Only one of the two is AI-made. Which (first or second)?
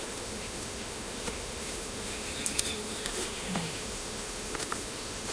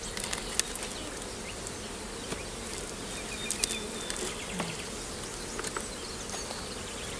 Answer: first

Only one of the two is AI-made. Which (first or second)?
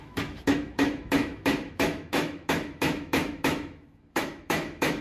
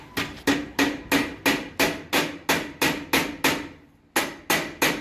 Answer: first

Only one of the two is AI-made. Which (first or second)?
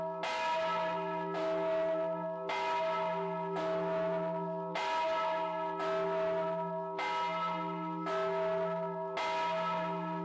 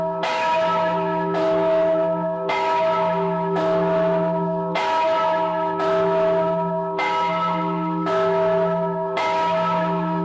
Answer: second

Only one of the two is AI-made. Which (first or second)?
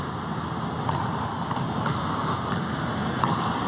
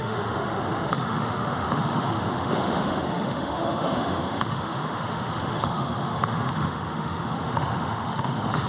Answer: second